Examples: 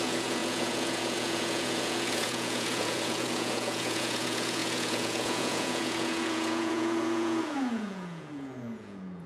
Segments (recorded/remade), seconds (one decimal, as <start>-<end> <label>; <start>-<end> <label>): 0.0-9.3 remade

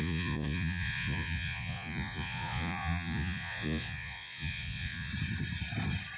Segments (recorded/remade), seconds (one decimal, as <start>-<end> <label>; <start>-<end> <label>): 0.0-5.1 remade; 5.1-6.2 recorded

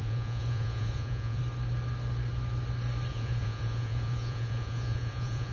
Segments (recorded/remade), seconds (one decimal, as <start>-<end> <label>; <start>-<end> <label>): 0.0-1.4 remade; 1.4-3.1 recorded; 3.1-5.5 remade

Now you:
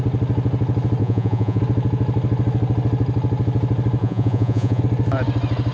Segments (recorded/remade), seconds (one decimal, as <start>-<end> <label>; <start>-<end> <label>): 0.0-1.0 recorded; 1.0-1.6 remade; 1.6-4.0 recorded; 4.0-4.8 remade; 4.8-5.7 recorded